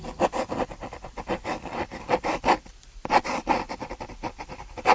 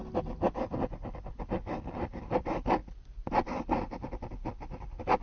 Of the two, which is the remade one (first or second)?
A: first